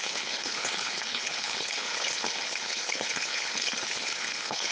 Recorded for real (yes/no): no